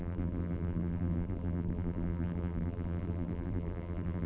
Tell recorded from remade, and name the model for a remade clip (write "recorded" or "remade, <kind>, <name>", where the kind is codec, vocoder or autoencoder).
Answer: remade, vocoder, BigVGAN v2